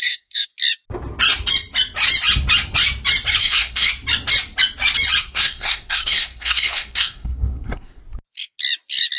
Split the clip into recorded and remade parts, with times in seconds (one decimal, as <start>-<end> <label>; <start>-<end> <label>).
0.0-0.5 remade; 0.5-3.4 recorded; 3.4-3.9 remade; 3.9-5.2 recorded; 5.2-8.0 remade; 8.0-9.2 recorded